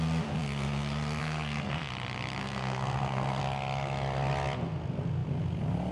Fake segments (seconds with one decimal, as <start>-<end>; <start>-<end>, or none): 1.2-1.9; 2.4-3.4